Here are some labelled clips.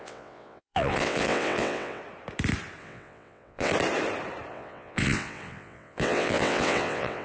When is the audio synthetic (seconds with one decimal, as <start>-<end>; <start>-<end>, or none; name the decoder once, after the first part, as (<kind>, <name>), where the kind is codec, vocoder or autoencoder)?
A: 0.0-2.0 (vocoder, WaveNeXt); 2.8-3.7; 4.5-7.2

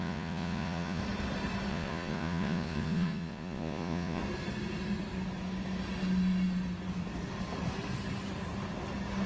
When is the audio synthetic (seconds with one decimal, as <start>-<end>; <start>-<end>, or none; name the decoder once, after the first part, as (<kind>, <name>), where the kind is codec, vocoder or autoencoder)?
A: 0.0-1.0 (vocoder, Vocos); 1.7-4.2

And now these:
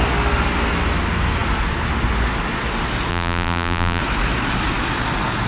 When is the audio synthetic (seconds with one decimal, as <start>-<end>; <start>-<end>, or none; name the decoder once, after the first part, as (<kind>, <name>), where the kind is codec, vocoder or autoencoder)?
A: 3.1-4.0 (vocoder, BigVGAN v2)

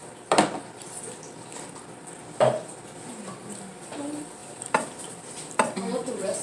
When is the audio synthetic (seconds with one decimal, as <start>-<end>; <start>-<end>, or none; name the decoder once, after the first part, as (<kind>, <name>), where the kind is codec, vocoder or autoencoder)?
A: 4.4-6.4 (vocoder, BigVGAN v2)

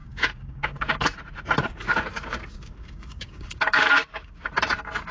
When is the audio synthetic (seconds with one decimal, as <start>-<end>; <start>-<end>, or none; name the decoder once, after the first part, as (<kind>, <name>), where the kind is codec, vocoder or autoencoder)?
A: 0.0-1.0 (codec, DAC); 1.7-4.5

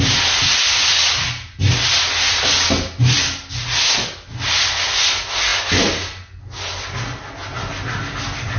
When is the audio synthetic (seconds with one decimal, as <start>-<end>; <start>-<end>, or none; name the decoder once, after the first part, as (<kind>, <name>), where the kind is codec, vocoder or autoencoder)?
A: none

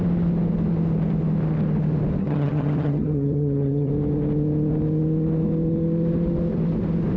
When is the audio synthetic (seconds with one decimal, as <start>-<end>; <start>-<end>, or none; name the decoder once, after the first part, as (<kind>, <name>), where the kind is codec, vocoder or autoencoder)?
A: 2.2-3.9 (vocoder, HiFi-GAN)